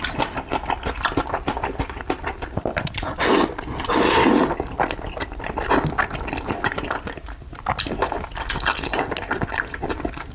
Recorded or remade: recorded